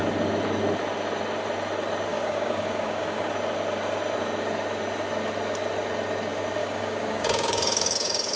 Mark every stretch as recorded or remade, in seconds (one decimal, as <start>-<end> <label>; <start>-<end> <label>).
0.0-2.1 recorded; 2.1-3.3 remade; 3.3-6.6 recorded; 6.6-8.4 remade